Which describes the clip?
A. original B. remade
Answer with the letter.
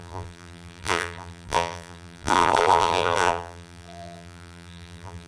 B